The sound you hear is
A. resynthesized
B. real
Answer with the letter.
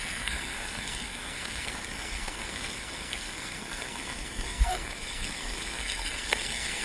A